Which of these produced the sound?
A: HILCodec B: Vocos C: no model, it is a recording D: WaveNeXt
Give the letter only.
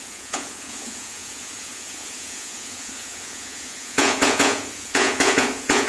B